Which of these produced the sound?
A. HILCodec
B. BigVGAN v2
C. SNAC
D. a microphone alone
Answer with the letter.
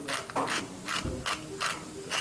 D